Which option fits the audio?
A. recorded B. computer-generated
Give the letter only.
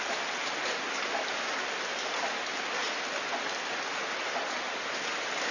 A